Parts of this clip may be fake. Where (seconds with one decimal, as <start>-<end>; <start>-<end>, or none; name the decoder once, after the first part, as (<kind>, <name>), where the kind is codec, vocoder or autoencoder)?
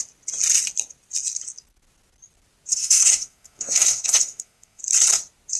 2.7-4.8 (codec, SNAC)